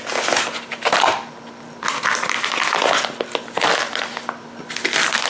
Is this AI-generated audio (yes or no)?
no